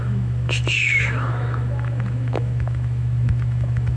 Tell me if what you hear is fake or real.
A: fake